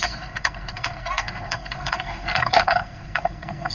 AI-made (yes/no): yes